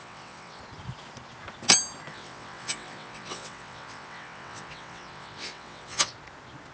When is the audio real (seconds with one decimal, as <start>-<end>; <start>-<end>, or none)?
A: 0.6-2.1; 6.1-6.7